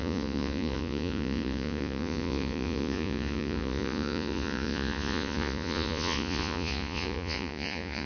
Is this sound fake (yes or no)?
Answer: yes